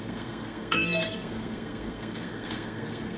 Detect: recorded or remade remade